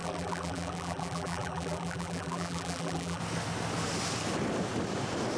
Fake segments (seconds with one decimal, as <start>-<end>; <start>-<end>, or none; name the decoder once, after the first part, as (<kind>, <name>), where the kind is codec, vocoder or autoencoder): 0.0-3.2 (vocoder, BigVGAN v2)